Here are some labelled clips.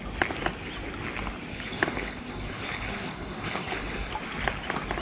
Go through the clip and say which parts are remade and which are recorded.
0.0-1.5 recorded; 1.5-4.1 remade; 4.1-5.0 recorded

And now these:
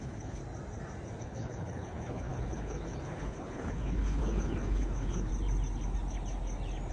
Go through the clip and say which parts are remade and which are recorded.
0.0-0.4 remade; 0.4-1.2 recorded; 1.2-5.3 remade; 5.3-6.9 recorded

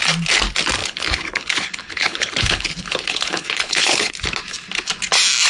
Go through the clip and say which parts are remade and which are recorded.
0.0-0.8 recorded; 0.8-4.1 remade; 4.1-5.5 recorded

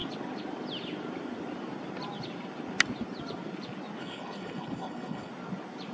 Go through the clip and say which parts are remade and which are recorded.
0.0-4.0 recorded; 4.0-5.3 remade; 5.3-5.9 recorded

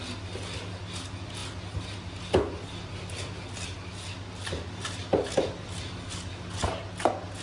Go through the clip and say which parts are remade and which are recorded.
0.0-7.4 recorded